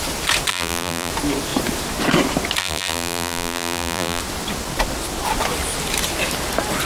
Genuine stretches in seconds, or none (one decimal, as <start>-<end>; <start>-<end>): 0.0-0.5; 1.1-2.6; 4.2-6.9